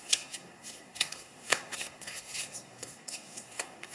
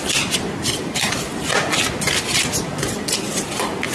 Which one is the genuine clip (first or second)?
second